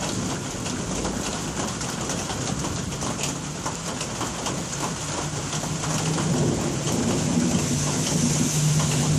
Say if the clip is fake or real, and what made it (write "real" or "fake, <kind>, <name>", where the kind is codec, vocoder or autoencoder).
real